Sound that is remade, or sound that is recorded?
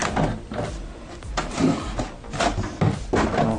recorded